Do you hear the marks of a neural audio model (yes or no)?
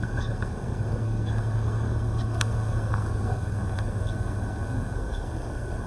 yes